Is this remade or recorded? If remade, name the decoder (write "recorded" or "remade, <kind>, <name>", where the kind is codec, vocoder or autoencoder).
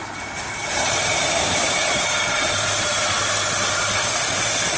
remade, vocoder, BigVGAN v2